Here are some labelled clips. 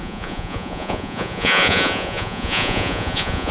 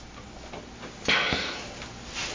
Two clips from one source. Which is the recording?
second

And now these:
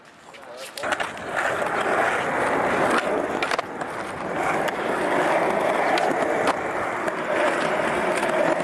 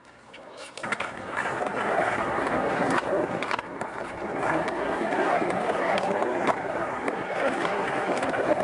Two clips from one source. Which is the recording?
first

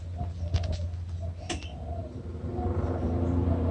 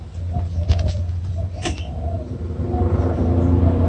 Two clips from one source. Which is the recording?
first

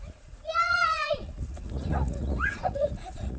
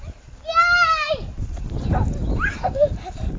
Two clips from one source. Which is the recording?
second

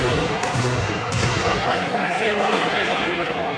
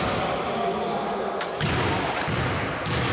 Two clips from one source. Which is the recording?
second